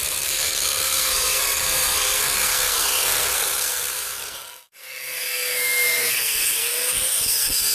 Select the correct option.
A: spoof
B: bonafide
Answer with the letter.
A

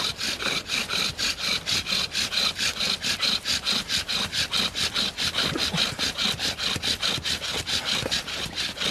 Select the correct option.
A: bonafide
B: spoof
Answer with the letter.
A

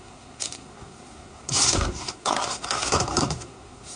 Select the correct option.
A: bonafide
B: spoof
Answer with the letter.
B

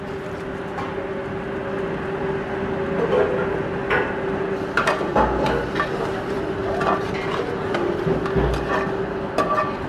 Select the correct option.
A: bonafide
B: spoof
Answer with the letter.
A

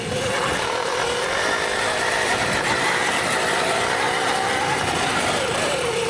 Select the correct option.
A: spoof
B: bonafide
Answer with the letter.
B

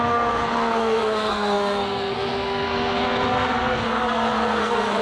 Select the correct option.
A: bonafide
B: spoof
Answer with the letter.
B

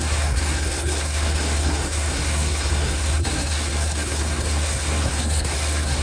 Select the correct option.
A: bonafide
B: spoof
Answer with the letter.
B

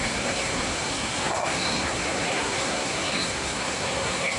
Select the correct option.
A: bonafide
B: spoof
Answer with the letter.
B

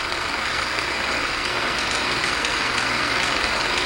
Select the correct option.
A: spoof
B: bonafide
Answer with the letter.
A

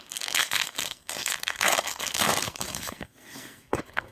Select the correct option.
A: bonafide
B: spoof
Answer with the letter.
B